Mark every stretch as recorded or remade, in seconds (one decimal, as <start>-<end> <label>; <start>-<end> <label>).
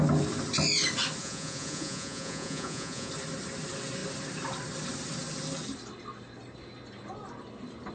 0.0-1.2 recorded; 1.2-3.1 remade; 3.1-7.9 recorded